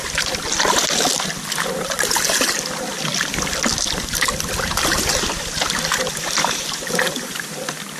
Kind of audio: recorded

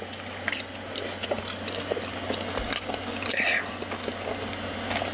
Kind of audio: recorded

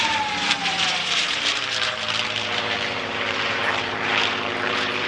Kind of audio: remade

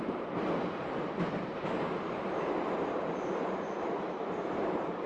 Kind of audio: remade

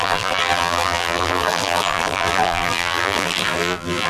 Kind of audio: remade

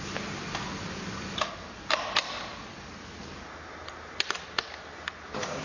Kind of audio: recorded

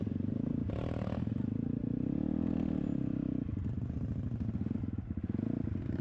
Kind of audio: recorded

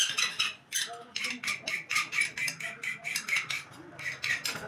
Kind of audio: recorded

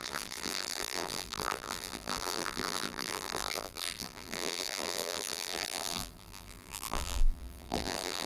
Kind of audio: remade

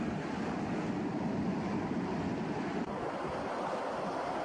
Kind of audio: remade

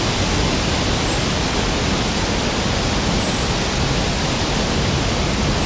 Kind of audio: recorded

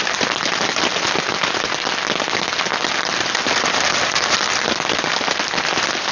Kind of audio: remade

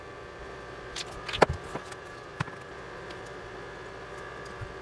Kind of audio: recorded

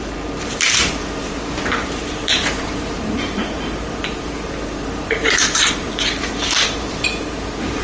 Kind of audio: remade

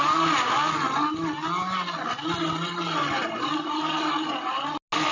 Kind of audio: recorded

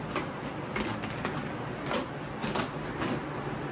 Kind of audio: recorded